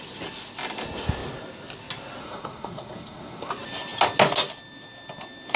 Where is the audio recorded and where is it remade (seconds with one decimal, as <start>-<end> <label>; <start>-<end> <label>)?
0.0-2.2 recorded; 2.2-3.5 remade; 3.5-5.6 recorded